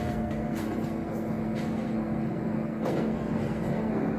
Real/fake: fake